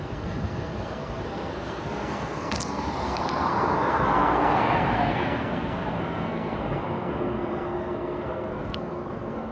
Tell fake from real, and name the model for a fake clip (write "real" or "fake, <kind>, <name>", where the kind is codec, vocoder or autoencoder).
fake, codec, SNAC